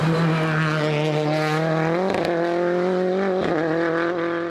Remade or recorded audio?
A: recorded